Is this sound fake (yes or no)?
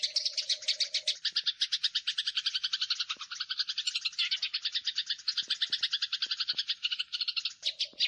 no